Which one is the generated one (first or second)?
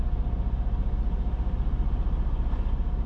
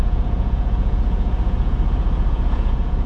second